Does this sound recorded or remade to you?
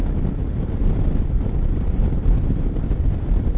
recorded